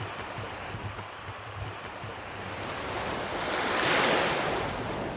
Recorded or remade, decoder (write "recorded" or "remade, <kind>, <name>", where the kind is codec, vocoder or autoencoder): recorded